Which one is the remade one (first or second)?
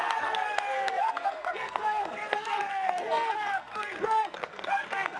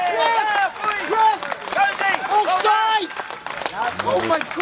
first